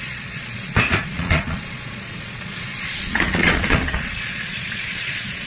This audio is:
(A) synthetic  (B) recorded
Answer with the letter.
A